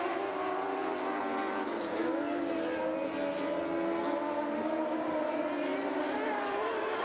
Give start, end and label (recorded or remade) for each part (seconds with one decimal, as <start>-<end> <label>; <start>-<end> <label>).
0.0-5.7 recorded; 5.7-7.0 remade